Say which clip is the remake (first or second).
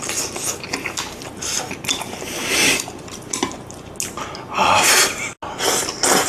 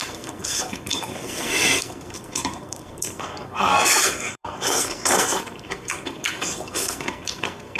second